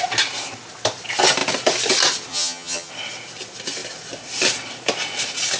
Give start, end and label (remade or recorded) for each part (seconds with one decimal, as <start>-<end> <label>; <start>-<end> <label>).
0.0-2.3 recorded; 2.3-2.9 remade; 2.9-5.6 recorded